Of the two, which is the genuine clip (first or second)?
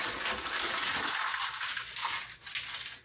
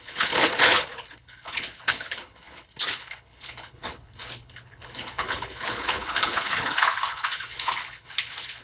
first